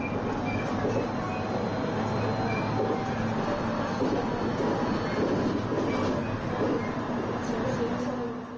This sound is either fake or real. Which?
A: real